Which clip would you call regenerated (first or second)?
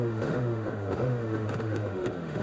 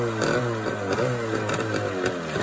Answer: first